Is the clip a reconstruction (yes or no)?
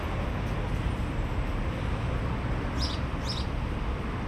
no